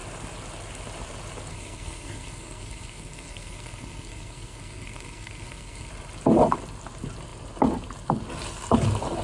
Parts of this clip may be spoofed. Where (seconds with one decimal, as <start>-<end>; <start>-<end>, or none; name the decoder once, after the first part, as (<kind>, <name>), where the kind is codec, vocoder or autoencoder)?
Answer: 1.5-5.9 (codec, SNAC)